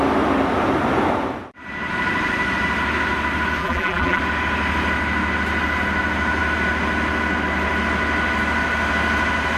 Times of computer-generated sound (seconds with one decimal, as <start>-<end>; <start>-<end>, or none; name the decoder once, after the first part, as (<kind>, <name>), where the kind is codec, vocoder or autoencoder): 3.6-4.2 (vocoder, BigVGAN v2)

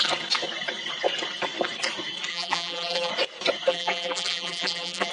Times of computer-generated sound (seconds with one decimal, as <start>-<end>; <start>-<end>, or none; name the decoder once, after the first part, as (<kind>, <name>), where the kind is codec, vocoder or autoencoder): 2.3-3.1 (vocoder, BigVGAN v2); 3.7-5.1

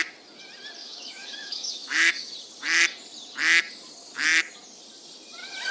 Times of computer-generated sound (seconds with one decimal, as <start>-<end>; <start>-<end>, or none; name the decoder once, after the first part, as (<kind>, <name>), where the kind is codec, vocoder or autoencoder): 0.8-2.1 (autoencoder, DAC-VAE)

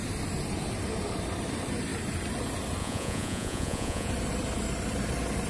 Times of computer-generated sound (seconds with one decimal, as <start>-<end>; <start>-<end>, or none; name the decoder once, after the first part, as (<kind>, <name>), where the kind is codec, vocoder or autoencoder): 2.8-4.1 (vocoder, Vocos)

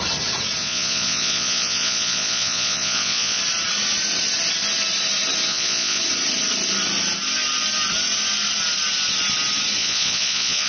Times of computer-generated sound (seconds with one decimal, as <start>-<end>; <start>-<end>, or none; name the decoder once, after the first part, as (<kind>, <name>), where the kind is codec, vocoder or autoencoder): 0.6-3.4 (vocoder, Vocos); 5.5-6.0; 9.8-10.7

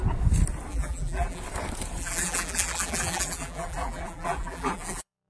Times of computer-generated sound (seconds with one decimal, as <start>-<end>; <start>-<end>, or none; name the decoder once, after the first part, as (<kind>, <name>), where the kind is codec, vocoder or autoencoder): 0.7-1.4 (vocoder, BigVGAN v2); 2.0-5.3

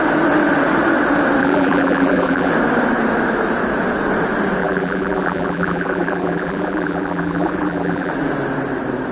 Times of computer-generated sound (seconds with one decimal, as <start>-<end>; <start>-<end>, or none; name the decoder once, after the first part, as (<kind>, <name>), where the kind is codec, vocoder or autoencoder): 1.4-2.5 (vocoder, BigVGAN v2); 4.6-8.1

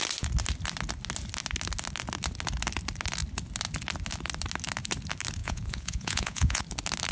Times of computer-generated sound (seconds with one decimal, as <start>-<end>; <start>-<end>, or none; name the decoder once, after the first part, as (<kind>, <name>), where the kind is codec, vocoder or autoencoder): 5.4-6.6 (vocoder, Vocos)